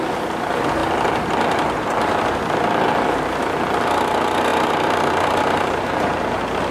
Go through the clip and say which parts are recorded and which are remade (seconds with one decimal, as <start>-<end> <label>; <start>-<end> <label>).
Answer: 0.0-4.5 recorded; 4.5-6.2 remade; 6.2-6.7 recorded